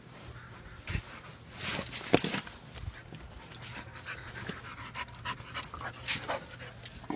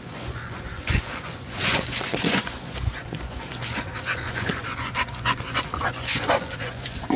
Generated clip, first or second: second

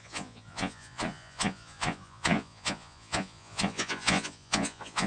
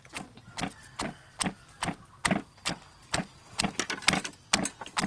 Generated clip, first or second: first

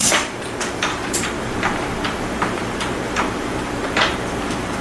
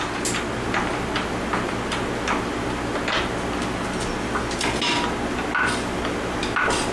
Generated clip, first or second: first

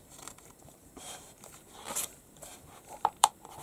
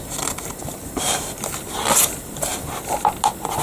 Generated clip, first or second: first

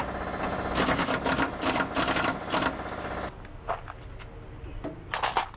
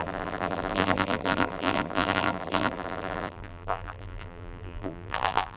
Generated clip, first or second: second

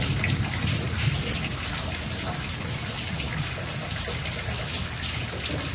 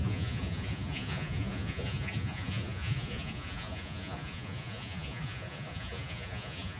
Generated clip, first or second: second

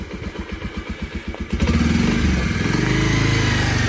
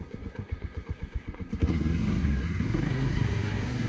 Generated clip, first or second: second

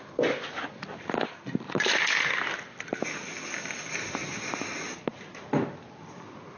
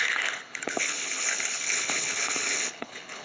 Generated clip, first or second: second